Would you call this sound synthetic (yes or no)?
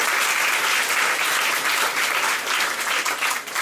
no